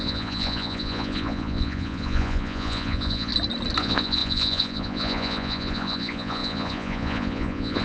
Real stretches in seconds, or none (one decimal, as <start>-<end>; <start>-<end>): 3.3-3.8

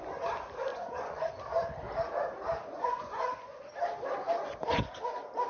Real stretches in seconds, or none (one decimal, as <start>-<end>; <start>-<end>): 0.0-0.7; 1.3-2.7; 3.7-5.5

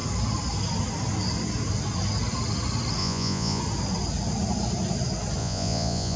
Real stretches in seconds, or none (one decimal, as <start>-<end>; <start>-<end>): 0.0-3.0; 3.6-5.4

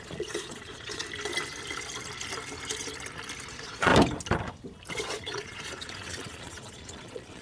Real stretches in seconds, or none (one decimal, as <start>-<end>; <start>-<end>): 1.0-3.5; 3.9-4.9

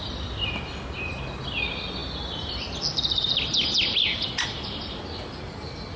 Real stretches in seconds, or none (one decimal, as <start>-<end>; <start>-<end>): 0.0-6.0

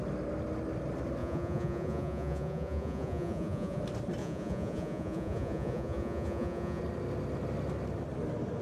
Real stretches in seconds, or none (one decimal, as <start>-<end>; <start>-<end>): 0.0-1.2; 3.8-4.2; 6.8-8.6